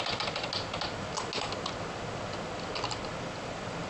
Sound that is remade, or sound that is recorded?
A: recorded